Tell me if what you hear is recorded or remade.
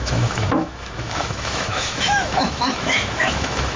remade